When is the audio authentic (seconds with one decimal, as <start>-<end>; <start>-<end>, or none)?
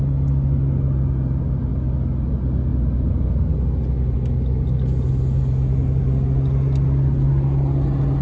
0.0-8.2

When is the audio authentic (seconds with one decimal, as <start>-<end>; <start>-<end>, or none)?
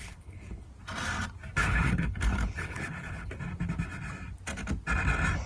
0.7-1.6; 3.3-5.5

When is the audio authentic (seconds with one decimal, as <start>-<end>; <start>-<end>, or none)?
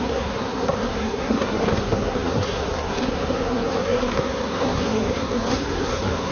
none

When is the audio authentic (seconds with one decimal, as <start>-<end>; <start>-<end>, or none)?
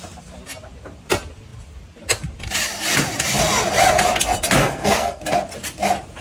0.0-4.6; 5.2-6.2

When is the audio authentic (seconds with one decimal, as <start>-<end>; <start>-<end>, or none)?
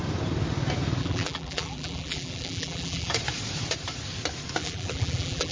0.0-1.0; 3.1-4.6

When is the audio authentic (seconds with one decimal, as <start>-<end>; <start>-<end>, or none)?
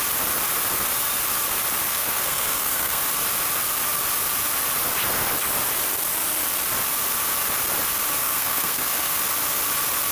0.0-1.9; 3.0-8.2; 9.2-10.1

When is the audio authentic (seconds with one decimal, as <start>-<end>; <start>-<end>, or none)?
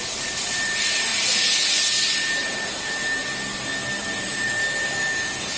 1.1-2.3; 3.2-4.2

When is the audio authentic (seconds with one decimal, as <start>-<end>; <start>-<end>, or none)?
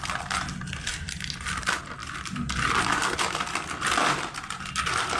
0.0-5.2